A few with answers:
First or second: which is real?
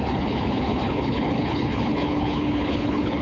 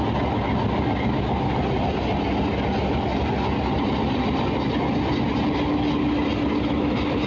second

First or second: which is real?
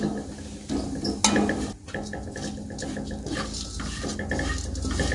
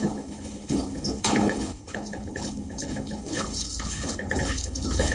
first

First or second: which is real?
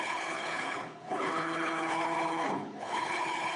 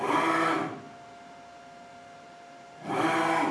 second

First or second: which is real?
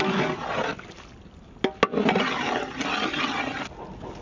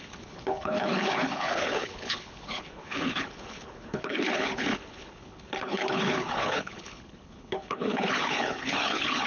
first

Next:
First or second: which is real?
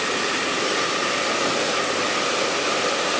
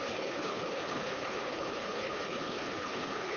first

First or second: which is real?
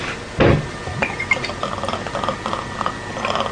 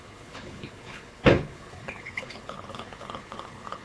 first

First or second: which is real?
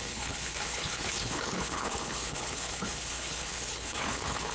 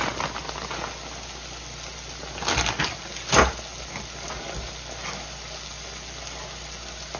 second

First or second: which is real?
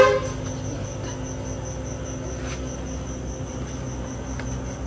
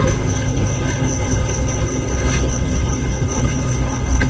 first